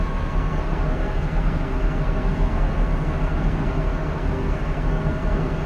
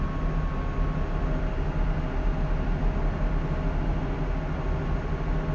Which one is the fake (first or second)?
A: first